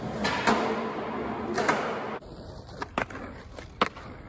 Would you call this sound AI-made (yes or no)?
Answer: no